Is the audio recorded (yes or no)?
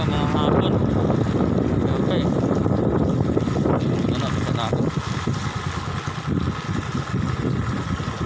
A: yes